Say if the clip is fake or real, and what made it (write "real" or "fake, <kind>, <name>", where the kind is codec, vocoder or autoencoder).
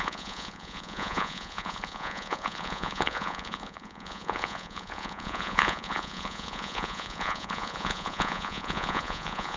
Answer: fake, vocoder, Vocos